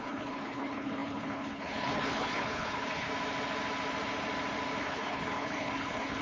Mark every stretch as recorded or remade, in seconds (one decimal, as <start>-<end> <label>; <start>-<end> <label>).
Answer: 0.0-3.1 remade; 3.1-4.8 recorded; 4.8-6.2 remade